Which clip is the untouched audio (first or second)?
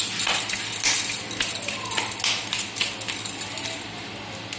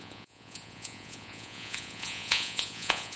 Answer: first